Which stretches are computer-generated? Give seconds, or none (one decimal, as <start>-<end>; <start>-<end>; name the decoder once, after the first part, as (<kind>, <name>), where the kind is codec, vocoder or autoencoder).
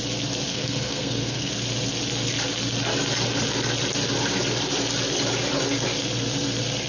0.5-1.5 (codec, SNAC)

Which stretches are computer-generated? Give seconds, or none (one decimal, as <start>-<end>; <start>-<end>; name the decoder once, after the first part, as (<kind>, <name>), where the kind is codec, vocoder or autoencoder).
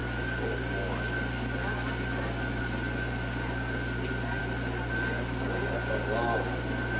none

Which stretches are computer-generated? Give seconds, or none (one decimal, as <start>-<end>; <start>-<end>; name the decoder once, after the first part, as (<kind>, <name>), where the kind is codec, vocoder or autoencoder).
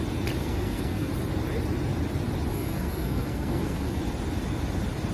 0.4-1.1 (codec, SNAC); 2.5-4.0